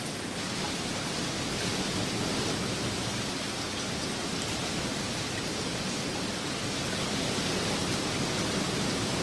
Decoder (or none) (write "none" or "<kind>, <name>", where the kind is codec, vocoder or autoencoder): none